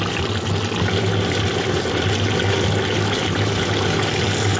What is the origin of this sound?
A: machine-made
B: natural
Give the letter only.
B